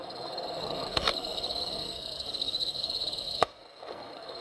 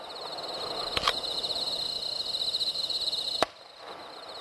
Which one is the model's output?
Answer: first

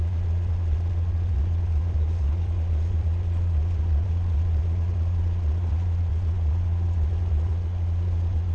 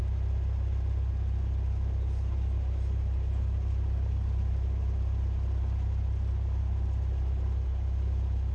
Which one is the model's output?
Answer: first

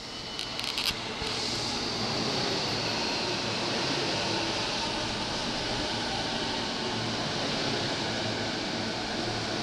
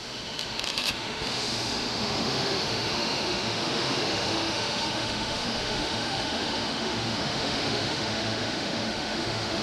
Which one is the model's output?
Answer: second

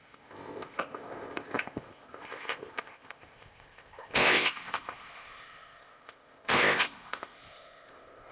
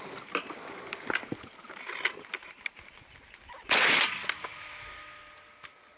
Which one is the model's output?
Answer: first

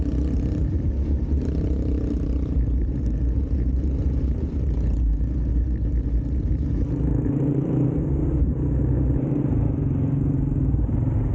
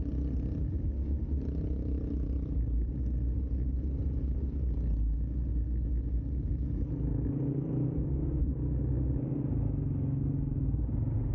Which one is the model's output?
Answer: first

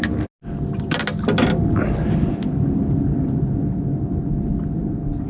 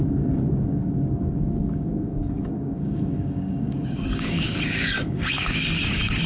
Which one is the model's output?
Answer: second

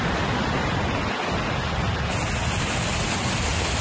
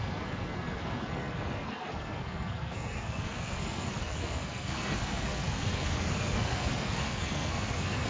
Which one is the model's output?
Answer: second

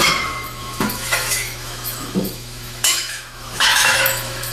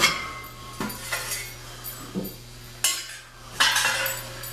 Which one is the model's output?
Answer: first